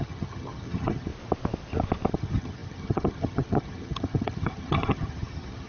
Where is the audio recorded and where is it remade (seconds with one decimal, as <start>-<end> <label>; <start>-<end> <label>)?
0.0-1.1 remade; 1.1-2.1 recorded; 2.1-5.7 remade